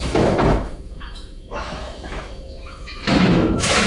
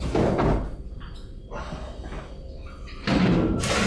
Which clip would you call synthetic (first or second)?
first